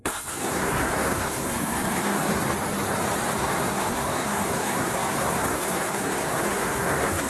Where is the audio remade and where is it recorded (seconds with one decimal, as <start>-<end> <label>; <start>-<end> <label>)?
0.0-2.4 remade; 2.4-3.4 recorded; 3.4-7.3 remade